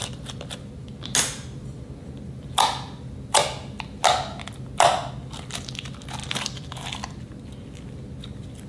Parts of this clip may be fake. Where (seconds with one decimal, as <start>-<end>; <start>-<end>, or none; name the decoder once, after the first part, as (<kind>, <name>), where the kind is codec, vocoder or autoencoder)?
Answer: none